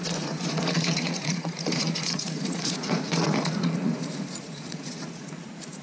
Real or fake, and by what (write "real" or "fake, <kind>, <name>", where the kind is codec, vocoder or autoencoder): fake, vocoder, Vocos